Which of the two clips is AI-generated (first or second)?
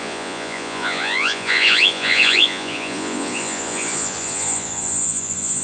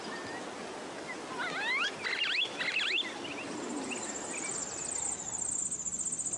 first